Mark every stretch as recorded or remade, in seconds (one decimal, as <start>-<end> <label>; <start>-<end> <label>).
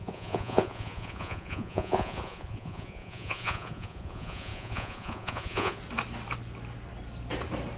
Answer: 0.0-5.8 remade; 5.8-7.8 recorded